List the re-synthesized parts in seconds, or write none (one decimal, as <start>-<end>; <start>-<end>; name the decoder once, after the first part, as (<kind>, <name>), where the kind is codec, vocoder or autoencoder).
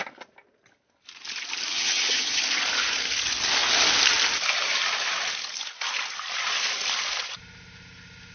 1.7-2.4 (vocoder, HiFi-GAN)